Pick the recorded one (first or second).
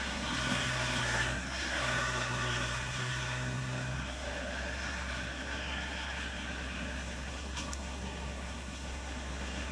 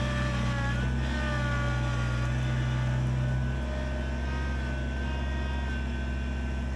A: second